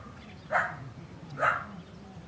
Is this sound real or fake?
real